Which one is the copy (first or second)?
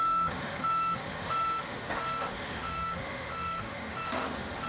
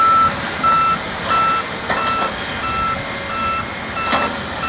first